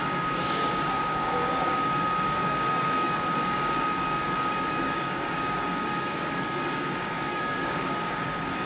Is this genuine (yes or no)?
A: no